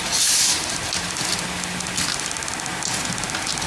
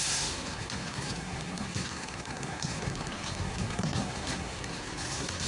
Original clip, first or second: first